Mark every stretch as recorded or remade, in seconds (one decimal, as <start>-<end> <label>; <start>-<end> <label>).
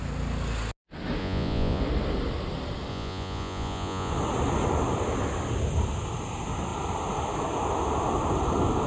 0.0-1.2 recorded; 1.2-1.8 remade; 1.8-2.9 recorded; 2.9-4.1 remade; 4.1-8.9 recorded